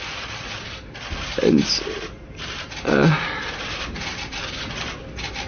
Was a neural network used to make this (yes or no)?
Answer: no